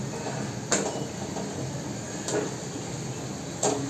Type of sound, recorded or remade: recorded